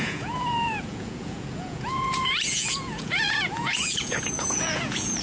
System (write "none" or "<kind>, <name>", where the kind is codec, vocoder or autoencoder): vocoder, Vocos